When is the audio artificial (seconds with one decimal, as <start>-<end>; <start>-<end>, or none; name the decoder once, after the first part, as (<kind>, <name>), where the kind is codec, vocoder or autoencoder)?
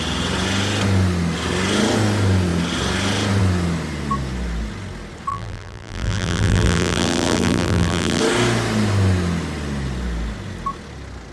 5.3-8.2 (vocoder, BigVGAN v2)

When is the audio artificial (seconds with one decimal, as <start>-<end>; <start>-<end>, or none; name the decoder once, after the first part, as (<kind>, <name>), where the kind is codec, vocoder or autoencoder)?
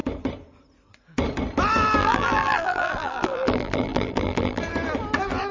2.0-4.6 (vocoder, BigVGAN v2)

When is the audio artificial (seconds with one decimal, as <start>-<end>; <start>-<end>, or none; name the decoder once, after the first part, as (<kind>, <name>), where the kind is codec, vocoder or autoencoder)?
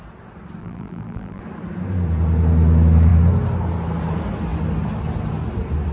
0.6-1.4 (vocoder, BigVGAN v2)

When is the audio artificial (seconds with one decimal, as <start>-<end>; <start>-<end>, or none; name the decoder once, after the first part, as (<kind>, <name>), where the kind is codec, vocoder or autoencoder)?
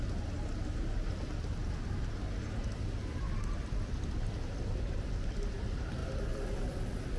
none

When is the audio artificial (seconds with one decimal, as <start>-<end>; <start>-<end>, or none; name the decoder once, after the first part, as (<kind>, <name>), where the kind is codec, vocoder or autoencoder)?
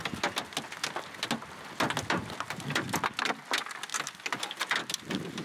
none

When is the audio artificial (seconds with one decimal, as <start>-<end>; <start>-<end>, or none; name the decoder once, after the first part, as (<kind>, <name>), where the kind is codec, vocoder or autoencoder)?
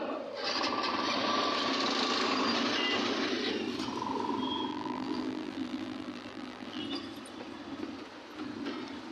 4.7-6.8 (vocoder, BigVGAN v2)